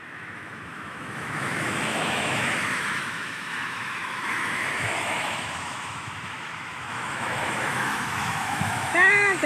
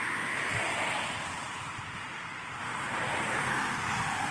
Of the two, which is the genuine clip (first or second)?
second